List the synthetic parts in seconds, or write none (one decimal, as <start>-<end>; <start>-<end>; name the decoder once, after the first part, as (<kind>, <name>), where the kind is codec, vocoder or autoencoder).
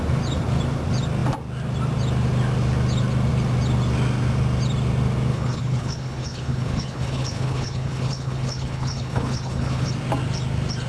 5.3-9.9 (codec, HILCodec)